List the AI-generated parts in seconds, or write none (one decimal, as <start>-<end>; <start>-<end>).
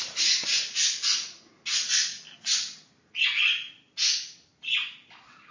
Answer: none